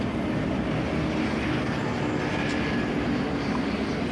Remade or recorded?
recorded